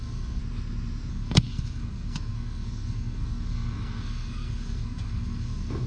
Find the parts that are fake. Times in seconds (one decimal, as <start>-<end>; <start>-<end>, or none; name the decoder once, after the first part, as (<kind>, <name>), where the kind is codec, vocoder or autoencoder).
0.0-0.4 (codec, SNAC); 1.1-5.9